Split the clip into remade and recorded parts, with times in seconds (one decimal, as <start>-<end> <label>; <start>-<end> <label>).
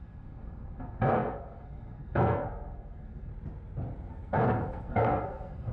0.0-3.3 remade; 3.3-4.1 recorded; 4.1-5.7 remade